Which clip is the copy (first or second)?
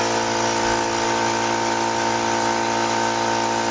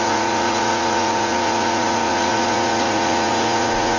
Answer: second